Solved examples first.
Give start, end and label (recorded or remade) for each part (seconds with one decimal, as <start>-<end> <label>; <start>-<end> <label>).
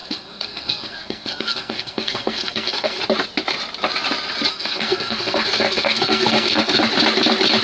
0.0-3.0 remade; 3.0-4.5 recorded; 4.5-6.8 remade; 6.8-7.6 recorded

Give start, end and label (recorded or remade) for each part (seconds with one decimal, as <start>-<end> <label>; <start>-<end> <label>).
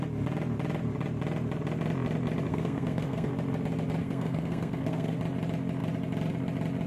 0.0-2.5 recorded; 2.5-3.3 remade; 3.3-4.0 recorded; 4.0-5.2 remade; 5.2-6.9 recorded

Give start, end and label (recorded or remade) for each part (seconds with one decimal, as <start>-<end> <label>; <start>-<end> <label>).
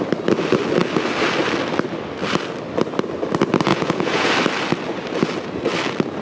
0.0-3.7 recorded; 3.7-4.3 remade; 4.3-6.2 recorded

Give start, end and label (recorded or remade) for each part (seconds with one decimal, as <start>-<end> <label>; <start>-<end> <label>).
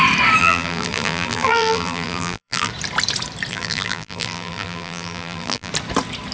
0.0-0.4 recorded; 0.4-2.7 remade; 2.7-3.5 recorded; 3.5-5.7 remade; 5.7-6.3 recorded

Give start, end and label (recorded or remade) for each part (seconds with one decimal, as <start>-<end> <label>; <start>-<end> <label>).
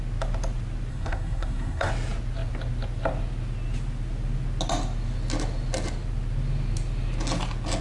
0.0-0.9 recorded; 0.9-1.9 remade; 1.9-7.8 recorded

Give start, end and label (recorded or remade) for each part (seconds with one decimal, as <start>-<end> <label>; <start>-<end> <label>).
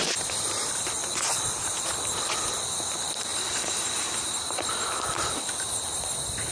0.0-1.0 recorded; 1.0-1.8 remade; 1.8-6.5 recorded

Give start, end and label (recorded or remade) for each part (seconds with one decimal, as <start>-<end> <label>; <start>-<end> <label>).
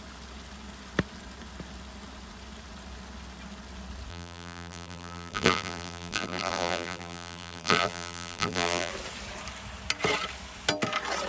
0.0-4.1 recorded; 4.1-8.9 remade; 8.9-11.3 recorded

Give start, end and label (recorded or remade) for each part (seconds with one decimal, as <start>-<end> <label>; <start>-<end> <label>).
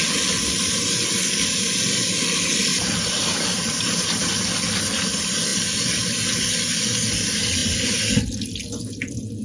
0.0-2.7 recorded; 2.7-4.3 remade; 4.3-9.4 recorded